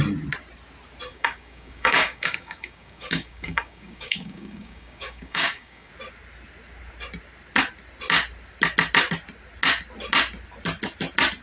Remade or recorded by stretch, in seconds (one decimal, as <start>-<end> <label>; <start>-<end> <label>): 0.0-1.1 recorded; 1.1-5.9 remade; 5.9-11.4 recorded